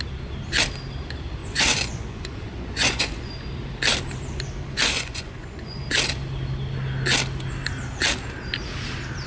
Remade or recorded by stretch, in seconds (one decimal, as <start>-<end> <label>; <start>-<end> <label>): 0.0-1.4 recorded; 1.4-3.3 remade; 3.3-4.9 recorded; 4.9-5.8 remade; 5.8-9.3 recorded